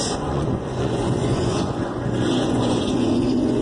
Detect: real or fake fake